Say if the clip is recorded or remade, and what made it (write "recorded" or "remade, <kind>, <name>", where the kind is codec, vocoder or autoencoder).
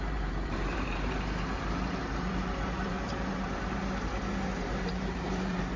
remade, vocoder, BigVGAN v2